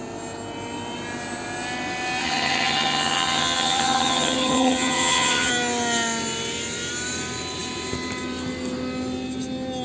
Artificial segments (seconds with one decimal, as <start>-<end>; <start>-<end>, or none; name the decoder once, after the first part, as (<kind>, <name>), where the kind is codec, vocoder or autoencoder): 2.2-5.5 (vocoder, HiFi-GAN)